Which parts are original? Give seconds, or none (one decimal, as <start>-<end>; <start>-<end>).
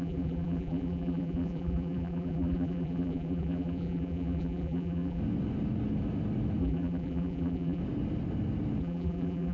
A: 5.2-6.6; 7.8-8.8